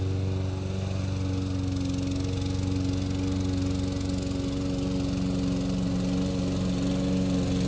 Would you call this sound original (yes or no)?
yes